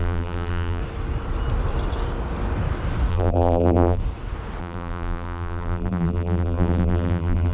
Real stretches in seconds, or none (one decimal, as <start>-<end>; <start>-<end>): 0.8-3.1; 4.0-4.6